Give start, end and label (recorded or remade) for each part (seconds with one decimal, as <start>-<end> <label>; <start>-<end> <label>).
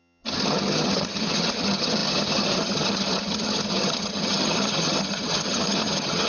0.0-6.3 remade